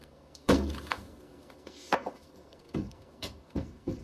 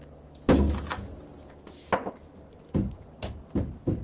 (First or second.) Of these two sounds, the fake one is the first